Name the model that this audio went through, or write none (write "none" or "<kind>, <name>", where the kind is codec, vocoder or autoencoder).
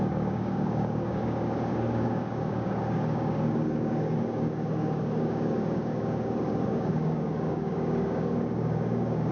codec, DAC